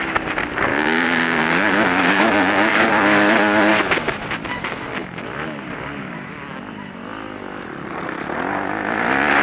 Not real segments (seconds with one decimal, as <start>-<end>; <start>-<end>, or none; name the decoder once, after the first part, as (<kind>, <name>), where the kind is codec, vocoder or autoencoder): 0.7-2.9 (codec, DAC)